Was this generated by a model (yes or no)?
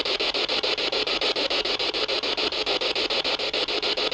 no